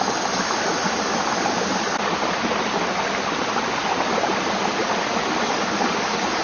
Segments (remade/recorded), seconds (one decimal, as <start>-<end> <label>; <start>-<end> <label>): 0.0-6.4 recorded